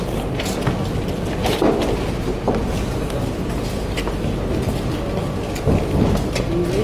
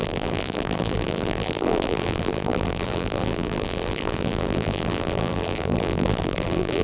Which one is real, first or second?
first